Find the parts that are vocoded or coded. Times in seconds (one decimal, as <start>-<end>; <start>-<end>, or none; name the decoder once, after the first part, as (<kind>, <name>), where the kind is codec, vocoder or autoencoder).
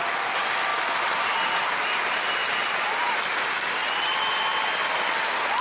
2.4-3.3 (vocoder, BigVGAN v2)